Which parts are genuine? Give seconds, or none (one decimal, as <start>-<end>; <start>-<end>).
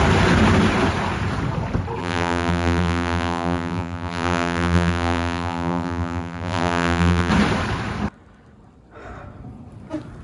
0.0-2.0; 7.3-10.2